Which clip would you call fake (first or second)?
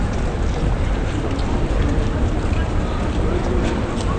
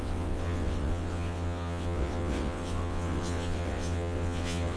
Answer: second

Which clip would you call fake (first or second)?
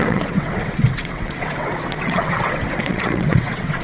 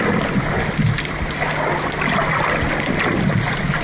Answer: first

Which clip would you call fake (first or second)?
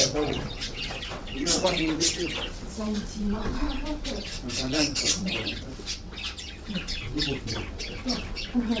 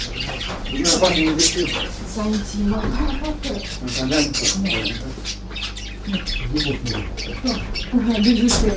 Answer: first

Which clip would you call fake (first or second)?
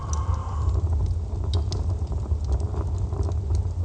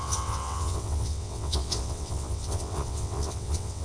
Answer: second